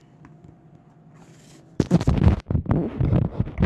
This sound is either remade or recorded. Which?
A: recorded